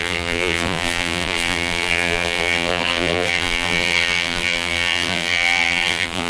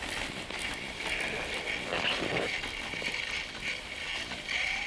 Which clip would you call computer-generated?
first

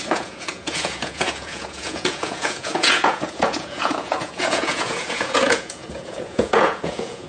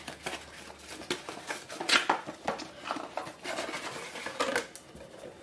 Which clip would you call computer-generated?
first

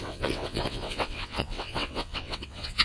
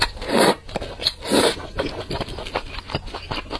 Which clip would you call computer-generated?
first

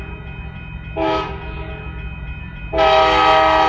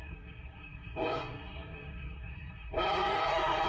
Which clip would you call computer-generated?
second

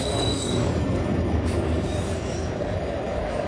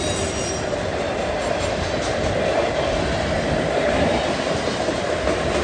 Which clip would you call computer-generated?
first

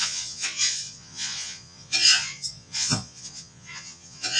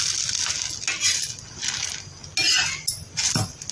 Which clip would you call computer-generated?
first